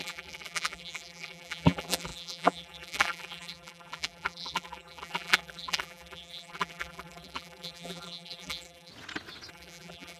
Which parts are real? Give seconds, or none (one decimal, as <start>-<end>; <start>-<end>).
8.9-9.5